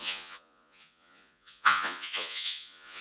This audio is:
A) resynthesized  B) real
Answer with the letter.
A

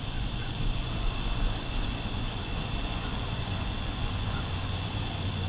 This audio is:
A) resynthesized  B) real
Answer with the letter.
A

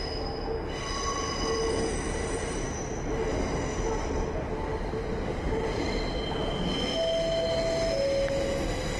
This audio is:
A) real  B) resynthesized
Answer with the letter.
A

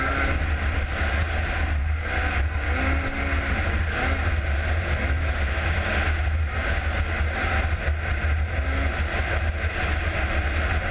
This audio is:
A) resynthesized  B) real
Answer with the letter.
B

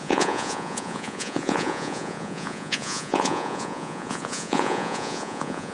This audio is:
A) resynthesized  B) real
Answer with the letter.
A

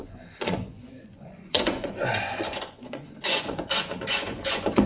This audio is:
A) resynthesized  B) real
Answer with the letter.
A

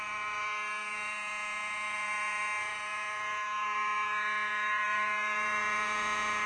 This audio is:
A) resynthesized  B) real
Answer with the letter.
A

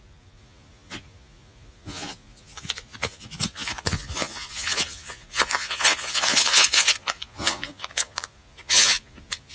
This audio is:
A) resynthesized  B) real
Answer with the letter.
A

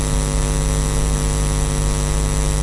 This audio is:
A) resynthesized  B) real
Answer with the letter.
B